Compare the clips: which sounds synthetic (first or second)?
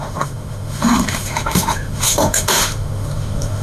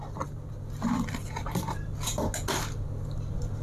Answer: first